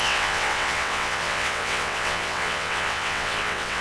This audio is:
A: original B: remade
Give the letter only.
B